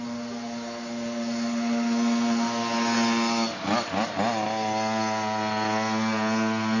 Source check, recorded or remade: recorded